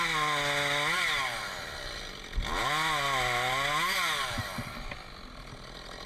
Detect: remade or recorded recorded